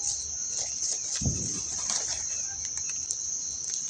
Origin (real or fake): real